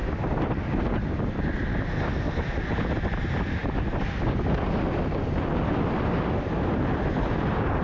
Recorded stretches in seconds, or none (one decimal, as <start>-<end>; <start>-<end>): 0.0-3.6; 5.0-7.8